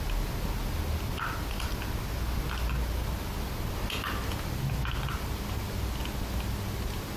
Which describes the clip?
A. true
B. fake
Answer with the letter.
A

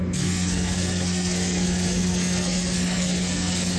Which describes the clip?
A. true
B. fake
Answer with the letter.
B